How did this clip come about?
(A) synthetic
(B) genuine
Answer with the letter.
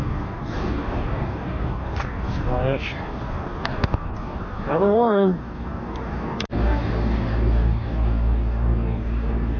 A